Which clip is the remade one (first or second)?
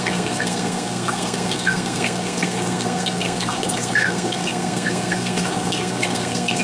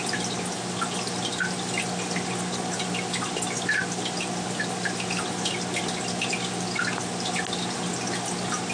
first